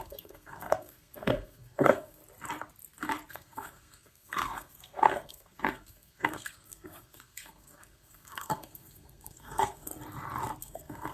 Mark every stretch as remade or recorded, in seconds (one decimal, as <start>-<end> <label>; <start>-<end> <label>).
0.0-2.2 remade; 2.2-3.3 recorded; 3.3-9.9 remade; 9.9-10.6 recorded; 10.6-11.1 remade